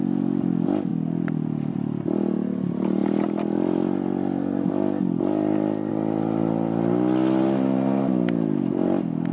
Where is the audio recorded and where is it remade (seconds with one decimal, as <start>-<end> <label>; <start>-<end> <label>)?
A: 0.0-0.9 recorded; 0.9-1.7 remade; 1.7-9.3 recorded

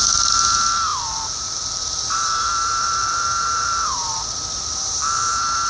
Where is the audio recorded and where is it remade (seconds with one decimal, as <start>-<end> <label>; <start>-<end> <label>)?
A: 0.0-0.9 recorded; 0.9-4.1 remade; 4.1-4.8 recorded; 4.8-5.3 remade; 5.3-5.7 recorded

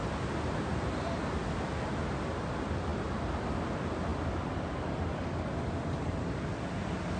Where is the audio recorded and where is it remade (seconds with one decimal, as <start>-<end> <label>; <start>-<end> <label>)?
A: 0.0-0.6 remade; 0.6-7.2 recorded